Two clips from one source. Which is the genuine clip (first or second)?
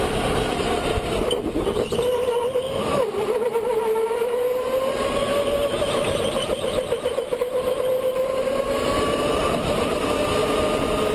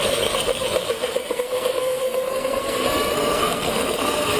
first